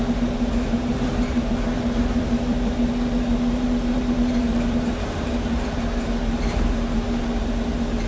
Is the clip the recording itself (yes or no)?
no